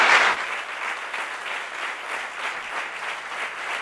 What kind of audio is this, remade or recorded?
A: recorded